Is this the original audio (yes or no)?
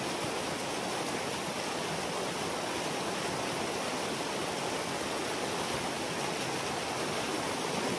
yes